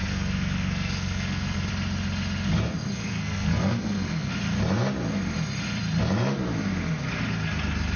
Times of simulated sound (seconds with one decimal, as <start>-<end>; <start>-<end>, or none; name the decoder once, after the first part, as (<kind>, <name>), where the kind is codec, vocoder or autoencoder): 0.0-1.7 (codec, SNAC); 2.9-4.3